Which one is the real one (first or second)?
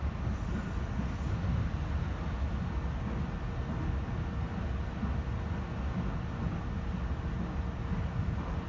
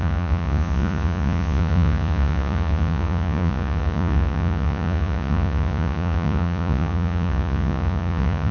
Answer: first